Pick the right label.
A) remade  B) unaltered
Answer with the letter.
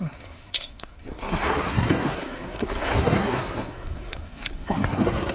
A